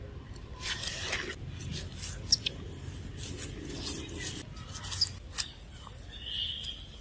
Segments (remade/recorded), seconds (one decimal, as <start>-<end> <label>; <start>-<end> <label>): 0.0-7.0 recorded